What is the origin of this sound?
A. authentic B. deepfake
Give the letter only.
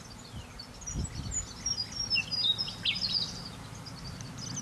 A